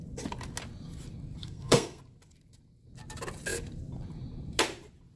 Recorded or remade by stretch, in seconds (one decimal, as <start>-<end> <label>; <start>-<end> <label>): 0.0-1.4 recorded; 1.4-2.0 remade; 2.0-5.2 recorded